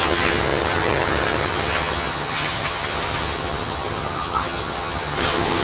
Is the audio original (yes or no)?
no